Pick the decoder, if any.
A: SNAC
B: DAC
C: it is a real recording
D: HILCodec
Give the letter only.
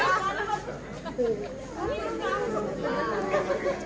C